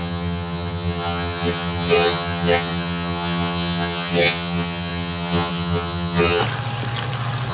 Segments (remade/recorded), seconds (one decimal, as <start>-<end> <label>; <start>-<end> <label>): 0.0-6.4 remade; 6.4-7.5 recorded